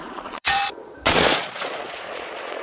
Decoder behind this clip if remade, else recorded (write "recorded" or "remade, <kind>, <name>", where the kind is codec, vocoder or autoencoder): remade, vocoder, Vocos